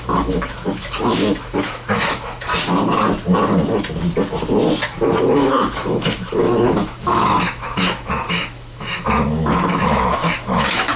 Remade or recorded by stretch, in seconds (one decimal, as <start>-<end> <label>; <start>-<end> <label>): 0.0-2.5 remade; 2.5-5.2 recorded; 5.2-11.0 remade